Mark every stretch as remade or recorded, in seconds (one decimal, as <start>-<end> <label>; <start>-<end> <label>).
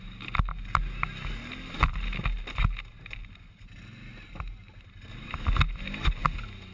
0.0-6.7 recorded